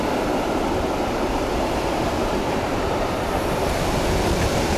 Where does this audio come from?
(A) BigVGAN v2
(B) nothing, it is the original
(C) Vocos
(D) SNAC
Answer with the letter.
B